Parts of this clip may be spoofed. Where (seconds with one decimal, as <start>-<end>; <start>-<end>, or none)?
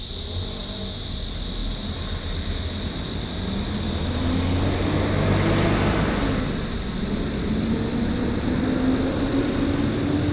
none